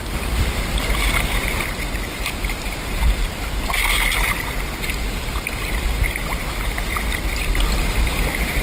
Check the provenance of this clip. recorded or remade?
remade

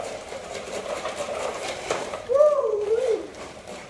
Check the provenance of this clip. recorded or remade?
remade